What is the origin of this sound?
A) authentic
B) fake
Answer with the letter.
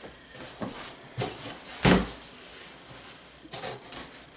A